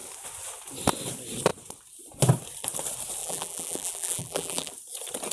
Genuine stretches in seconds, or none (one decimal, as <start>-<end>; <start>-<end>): 0.0-3.2; 4.7-5.3